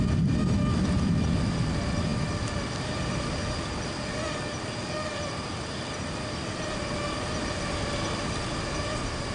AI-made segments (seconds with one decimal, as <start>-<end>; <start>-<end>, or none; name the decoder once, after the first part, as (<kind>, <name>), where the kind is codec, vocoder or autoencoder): none